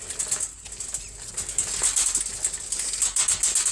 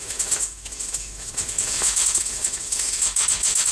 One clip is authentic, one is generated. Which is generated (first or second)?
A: second